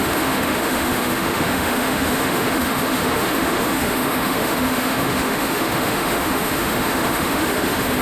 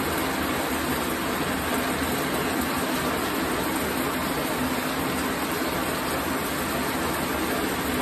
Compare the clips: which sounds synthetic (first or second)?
first